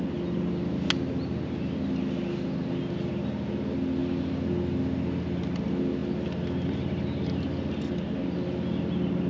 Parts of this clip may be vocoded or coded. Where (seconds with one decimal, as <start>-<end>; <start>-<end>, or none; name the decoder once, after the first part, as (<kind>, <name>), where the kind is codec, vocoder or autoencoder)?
none